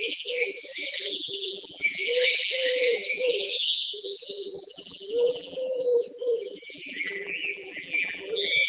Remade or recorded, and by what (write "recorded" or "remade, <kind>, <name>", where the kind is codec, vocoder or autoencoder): remade, vocoder, BigVGAN v2